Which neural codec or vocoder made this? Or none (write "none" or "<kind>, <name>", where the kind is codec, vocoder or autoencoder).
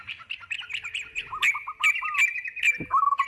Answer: none